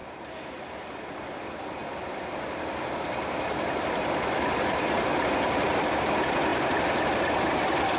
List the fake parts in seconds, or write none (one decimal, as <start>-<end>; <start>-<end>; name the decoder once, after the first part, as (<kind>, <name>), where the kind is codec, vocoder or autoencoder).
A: 1.8-6.0 (vocoder, BigVGAN v2); 6.5-7.4